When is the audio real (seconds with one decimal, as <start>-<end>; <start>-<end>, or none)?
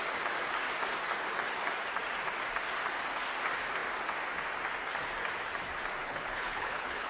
0.0-6.0